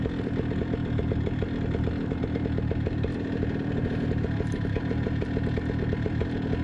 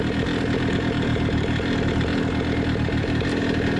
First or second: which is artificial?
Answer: first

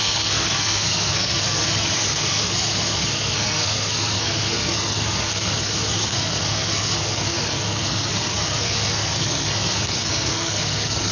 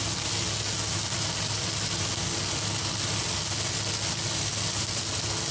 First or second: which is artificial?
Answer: first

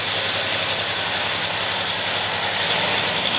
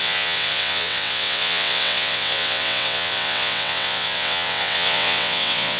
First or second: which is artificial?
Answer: second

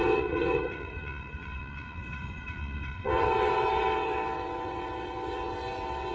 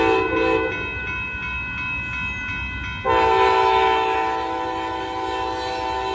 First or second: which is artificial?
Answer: first